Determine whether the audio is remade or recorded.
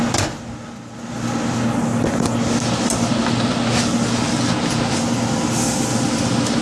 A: recorded